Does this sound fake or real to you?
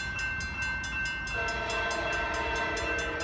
real